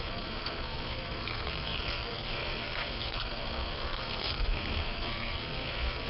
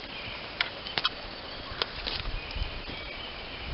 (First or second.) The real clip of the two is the second